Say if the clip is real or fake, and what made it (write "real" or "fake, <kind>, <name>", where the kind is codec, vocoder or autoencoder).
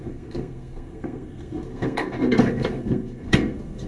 fake, codec, SNAC